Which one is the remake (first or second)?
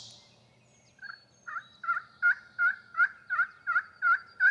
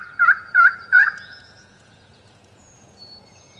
second